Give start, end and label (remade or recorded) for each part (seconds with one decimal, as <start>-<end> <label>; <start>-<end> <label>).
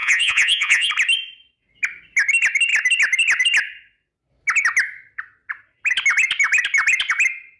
0.0-0.9 remade; 0.9-7.6 recorded